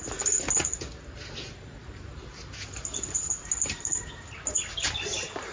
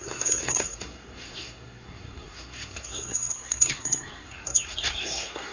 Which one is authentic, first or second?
first